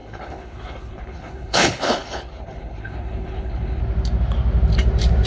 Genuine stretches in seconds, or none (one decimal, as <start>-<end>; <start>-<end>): 3.8-5.3